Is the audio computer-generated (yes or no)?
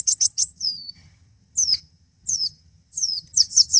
yes